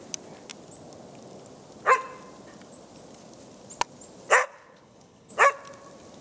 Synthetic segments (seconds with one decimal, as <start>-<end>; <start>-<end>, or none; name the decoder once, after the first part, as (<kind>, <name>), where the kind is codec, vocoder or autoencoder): 4.4-5.3 (codec, HILCodec)